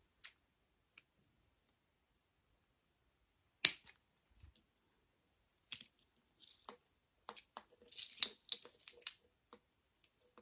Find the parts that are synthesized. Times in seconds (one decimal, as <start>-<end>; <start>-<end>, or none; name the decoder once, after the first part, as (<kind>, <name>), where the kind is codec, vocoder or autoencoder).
none